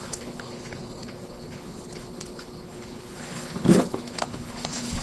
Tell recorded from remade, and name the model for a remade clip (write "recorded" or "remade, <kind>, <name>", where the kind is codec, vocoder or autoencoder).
remade, codec, HILCodec